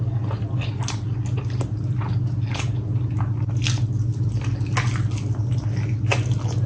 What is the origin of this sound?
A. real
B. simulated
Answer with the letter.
A